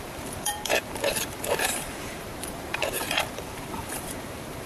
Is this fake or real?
fake